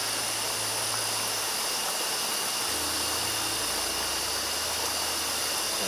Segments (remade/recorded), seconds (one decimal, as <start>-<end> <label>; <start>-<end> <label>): 0.0-5.9 recorded